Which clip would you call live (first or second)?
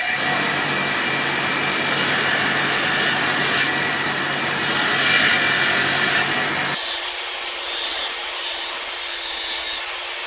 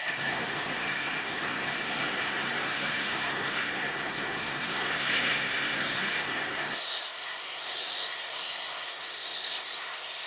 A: first